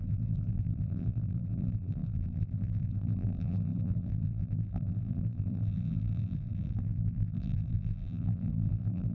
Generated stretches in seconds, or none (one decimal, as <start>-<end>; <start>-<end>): 0.0-9.1